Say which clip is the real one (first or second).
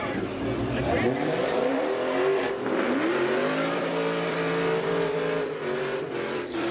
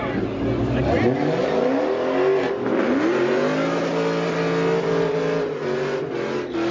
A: second